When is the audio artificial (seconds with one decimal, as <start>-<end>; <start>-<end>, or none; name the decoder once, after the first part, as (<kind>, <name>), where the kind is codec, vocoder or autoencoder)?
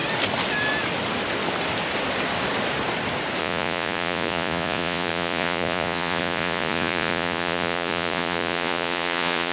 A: 3.4-9.5 (vocoder, Vocos)